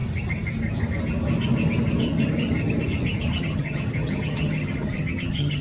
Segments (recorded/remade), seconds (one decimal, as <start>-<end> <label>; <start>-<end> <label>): 0.0-3.4 recorded; 3.4-5.6 remade

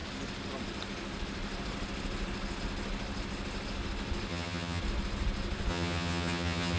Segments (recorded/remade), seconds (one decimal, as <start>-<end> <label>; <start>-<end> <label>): 0.0-4.3 recorded; 4.3-4.8 remade; 4.8-5.7 recorded; 5.7-6.8 remade